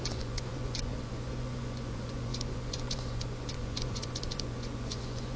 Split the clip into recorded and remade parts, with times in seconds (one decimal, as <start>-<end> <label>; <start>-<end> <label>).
0.0-5.4 remade